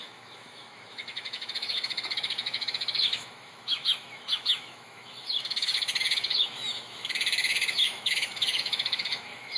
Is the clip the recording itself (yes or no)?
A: no